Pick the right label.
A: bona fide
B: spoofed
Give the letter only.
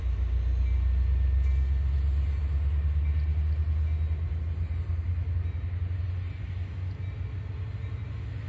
A